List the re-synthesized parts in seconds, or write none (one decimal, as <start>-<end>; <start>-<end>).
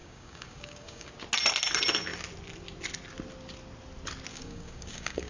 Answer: 0.0-1.1; 4.3-5.3